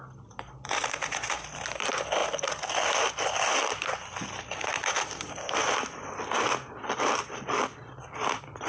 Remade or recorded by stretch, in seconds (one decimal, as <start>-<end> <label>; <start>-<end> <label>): 0.0-8.7 remade